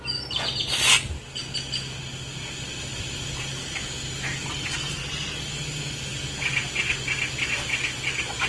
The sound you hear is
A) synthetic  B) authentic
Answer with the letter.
B